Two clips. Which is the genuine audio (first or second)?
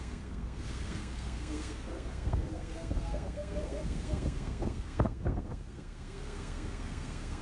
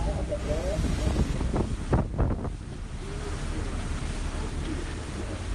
second